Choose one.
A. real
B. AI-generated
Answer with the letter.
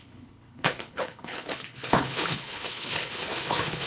B